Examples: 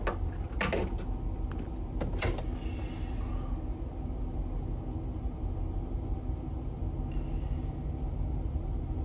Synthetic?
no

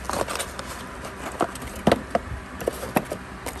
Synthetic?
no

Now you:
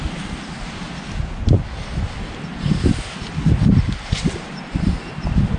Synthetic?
no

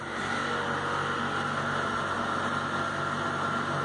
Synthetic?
no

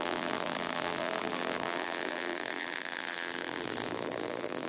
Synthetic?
yes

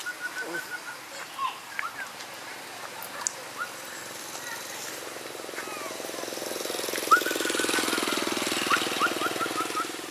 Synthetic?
no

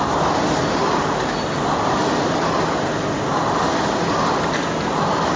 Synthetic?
no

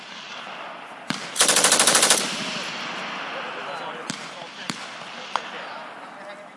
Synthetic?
no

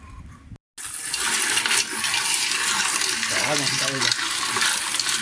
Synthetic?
no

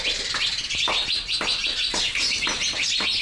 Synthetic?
no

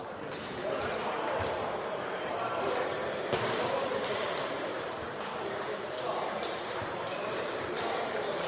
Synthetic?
yes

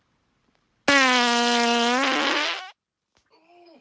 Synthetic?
no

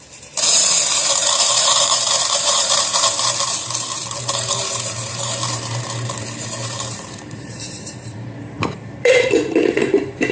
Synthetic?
yes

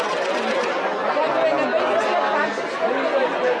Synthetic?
no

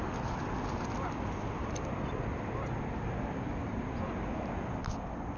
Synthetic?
no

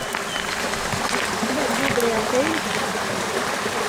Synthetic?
no